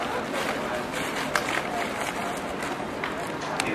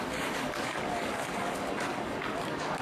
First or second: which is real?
first